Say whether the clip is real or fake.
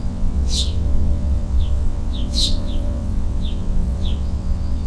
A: fake